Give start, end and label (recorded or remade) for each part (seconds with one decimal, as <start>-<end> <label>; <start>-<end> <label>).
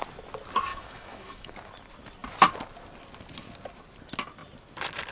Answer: 0.0-0.7 recorded; 0.7-1.5 remade; 1.5-5.1 recorded